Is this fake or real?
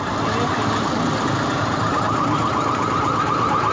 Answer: real